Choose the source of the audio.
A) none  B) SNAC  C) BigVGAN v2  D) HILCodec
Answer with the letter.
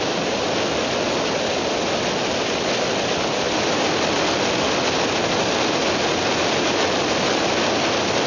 A